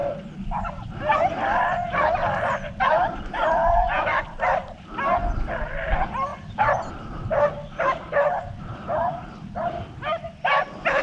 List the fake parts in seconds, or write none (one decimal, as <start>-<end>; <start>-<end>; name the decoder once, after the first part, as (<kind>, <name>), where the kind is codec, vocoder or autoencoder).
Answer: none